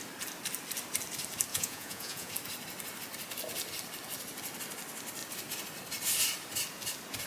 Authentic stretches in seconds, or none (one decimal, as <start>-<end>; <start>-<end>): 0.0-1.5; 2.3-7.3